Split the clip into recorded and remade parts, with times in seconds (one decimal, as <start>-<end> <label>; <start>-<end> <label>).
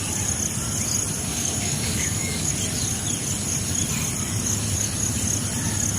0.0-1.3 recorded; 1.3-2.5 remade; 2.5-6.0 recorded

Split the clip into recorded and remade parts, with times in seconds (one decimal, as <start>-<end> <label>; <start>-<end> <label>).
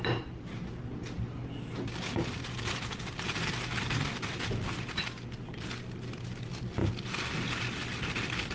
0.0-8.5 recorded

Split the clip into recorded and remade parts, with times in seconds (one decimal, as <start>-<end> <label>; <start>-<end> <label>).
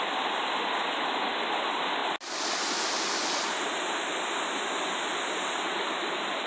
0.0-6.5 recorded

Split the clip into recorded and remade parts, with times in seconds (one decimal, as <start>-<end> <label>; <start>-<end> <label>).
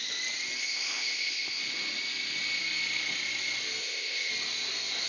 0.0-0.6 recorded; 0.6-1.6 remade; 1.6-3.8 recorded; 3.8-4.3 remade; 4.3-5.1 recorded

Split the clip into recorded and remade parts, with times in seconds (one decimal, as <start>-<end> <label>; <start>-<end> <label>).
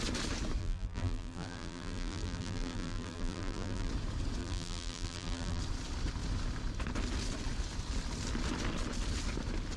0.0-0.6 recorded; 0.6-3.9 remade; 3.9-4.4 recorded; 4.4-5.6 remade; 5.6-9.8 recorded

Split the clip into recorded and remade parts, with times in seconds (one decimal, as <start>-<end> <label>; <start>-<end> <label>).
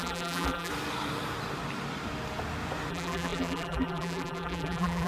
0.0-0.7 remade; 0.7-2.9 recorded; 2.9-5.1 remade